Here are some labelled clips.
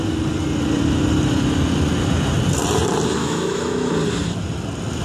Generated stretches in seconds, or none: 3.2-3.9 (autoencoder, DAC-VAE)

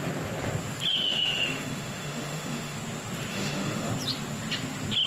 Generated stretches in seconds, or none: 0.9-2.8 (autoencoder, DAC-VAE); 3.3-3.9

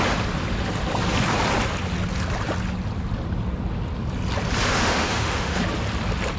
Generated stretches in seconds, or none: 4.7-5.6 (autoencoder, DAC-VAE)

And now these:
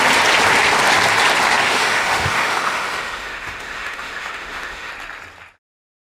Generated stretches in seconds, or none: 1.6-4.9 (autoencoder, DAC-VAE)